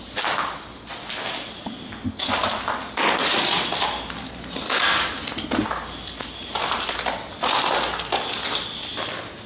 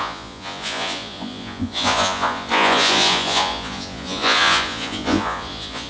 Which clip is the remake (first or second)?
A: second